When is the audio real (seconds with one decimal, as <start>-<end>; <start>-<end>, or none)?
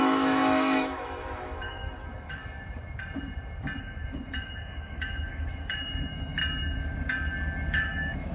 2.4-3.8; 6.4-7.7